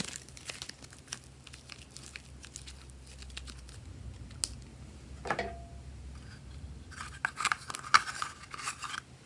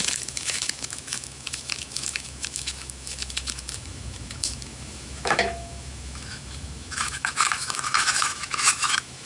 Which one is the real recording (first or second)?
first